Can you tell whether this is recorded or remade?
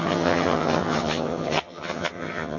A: remade